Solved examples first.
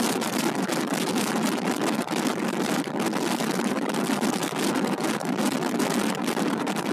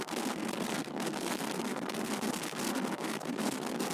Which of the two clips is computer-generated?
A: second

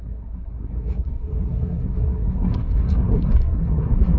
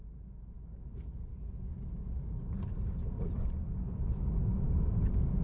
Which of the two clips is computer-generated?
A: first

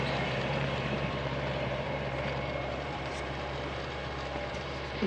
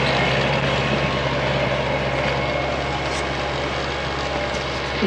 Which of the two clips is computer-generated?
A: first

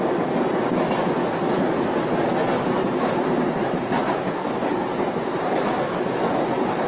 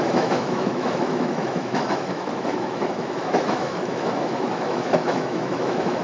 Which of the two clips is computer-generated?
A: second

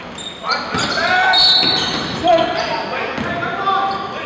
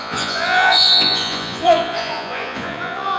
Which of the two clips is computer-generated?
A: second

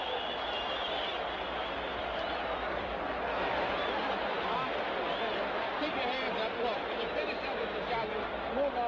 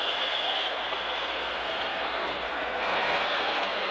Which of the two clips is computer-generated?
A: second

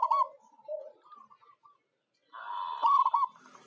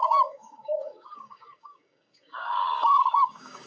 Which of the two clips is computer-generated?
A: second